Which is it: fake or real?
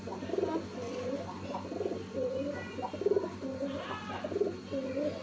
real